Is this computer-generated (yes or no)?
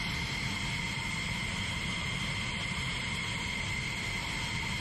no